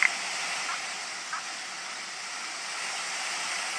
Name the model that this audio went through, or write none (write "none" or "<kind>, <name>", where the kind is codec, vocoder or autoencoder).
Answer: none